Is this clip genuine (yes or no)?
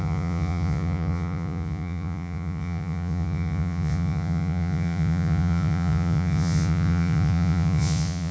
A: no